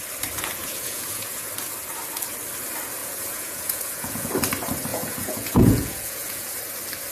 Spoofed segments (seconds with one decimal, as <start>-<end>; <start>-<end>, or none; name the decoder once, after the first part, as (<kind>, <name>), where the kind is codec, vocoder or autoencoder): 0.6-1.5 (vocoder, Vocos); 3.0-4.3; 4.9-6.6